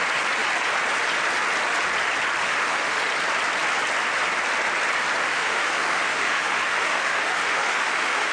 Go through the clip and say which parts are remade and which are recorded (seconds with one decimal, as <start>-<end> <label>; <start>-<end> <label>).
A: 0.0-2.4 recorded; 2.4-3.0 remade; 3.0-5.2 recorded; 5.2-8.3 remade